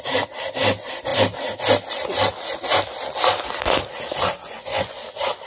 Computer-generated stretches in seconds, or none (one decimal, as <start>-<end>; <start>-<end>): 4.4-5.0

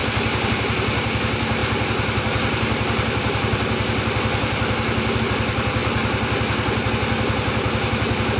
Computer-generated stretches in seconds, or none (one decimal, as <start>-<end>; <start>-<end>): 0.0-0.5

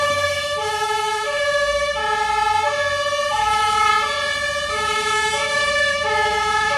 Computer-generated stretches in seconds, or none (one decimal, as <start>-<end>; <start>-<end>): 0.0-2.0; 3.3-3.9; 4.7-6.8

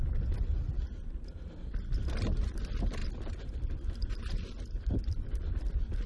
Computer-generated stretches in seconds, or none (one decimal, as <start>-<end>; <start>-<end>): 0.0-0.5; 1.9-6.1

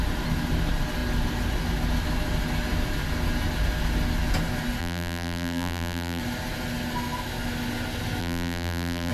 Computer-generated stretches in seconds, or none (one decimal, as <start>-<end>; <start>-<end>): 4.8-6.2; 8.2-9.1

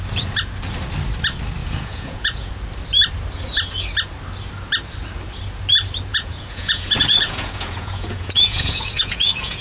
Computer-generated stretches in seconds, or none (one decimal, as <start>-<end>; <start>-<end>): 1.6-2.5; 6.1-9.6